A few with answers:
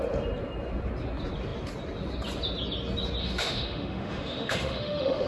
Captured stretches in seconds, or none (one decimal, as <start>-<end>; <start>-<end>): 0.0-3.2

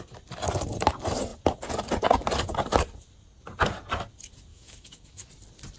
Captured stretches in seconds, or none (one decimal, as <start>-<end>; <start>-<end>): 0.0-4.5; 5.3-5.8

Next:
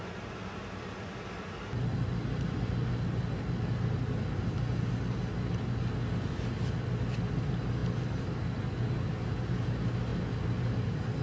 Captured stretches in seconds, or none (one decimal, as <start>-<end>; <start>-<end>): 0.0-11.2